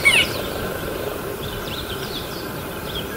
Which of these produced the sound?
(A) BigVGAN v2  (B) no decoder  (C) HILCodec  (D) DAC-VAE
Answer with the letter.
A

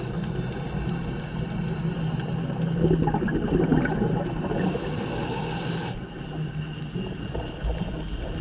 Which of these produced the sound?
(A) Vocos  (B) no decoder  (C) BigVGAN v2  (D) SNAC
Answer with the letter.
B